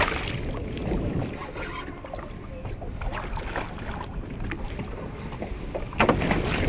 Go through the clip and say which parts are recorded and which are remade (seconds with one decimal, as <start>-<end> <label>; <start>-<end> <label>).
0.0-6.7 recorded